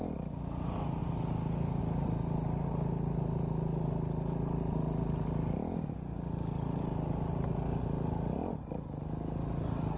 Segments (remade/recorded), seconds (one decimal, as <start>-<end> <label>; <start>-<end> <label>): 0.0-10.0 recorded